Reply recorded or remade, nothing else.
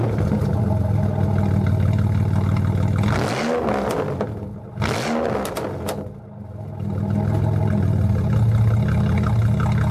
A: recorded